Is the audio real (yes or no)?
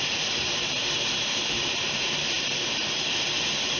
no